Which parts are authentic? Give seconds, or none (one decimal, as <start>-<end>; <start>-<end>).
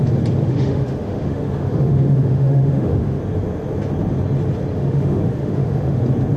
0.0-0.4; 3.2-4.7; 6.0-6.4